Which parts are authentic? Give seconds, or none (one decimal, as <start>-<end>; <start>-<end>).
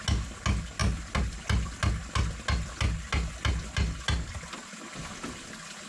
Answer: 0.0-5.9